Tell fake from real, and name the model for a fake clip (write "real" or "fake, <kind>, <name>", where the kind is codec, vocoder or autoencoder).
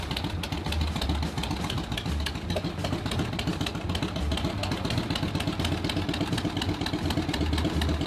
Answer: real